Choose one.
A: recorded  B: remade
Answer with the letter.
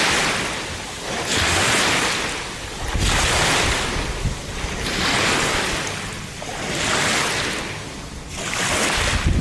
A